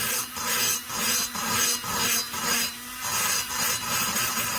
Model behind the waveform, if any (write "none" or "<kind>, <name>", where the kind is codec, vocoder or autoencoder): none